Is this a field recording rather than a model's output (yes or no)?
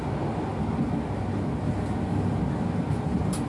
yes